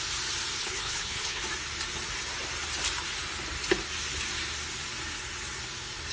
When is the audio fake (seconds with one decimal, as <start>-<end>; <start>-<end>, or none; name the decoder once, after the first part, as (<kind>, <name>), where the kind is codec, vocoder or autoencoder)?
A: 0.6-1.4 (codec, HILCodec)